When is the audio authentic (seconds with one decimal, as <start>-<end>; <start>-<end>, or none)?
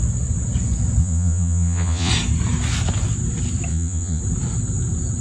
0.0-1.0; 2.1-3.7; 4.2-5.2